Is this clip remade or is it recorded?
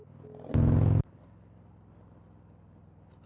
recorded